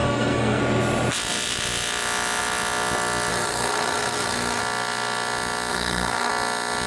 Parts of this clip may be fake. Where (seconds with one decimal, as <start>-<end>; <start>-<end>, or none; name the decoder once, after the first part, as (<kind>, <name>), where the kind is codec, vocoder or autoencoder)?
0.0-0.6 (codec, SNAC); 3.3-4.6; 5.7-6.3